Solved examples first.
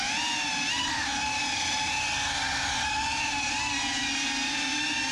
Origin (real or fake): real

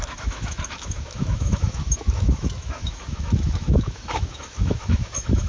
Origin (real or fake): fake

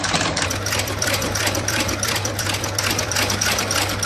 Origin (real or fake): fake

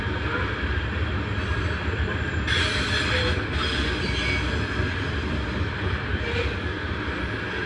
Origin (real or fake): real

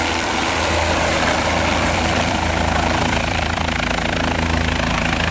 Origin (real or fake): fake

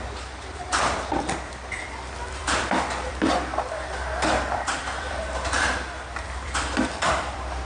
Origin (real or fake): fake